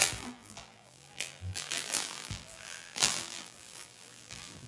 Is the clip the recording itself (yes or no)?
no